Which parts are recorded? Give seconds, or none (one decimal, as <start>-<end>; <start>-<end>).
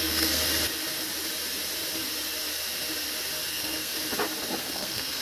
0.4-3.5; 3.9-4.6